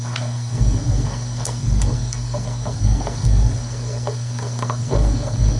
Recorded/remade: remade